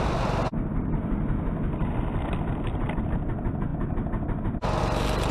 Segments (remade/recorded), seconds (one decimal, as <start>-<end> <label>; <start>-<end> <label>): 0.0-5.3 recorded